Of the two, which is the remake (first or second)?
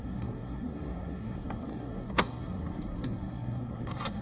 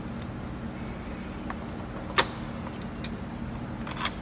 first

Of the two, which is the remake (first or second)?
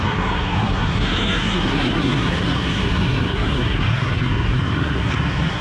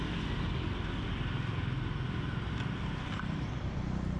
first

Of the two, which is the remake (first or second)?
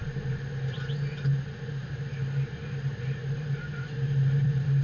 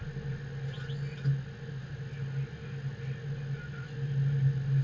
first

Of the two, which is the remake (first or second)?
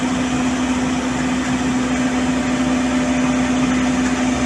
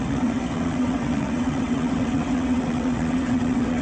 second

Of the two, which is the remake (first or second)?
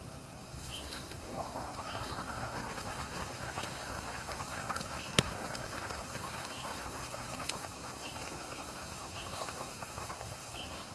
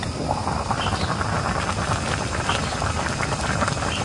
first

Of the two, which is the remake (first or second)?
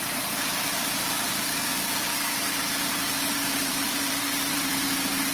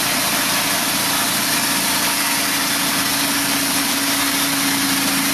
first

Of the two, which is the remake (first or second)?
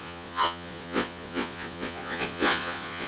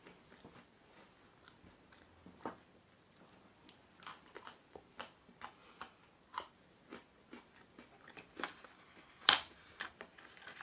first